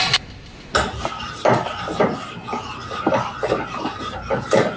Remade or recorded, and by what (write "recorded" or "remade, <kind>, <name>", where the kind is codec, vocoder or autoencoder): recorded